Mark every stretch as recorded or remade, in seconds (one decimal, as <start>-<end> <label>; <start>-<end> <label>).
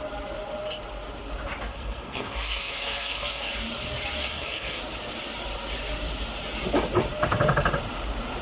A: 0.0-1.7 recorded; 1.7-3.5 remade; 3.5-4.2 recorded; 4.2-4.8 remade; 4.8-8.4 recorded